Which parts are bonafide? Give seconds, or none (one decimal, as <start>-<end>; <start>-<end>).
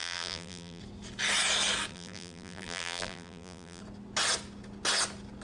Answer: 0.8-1.9; 3.8-5.4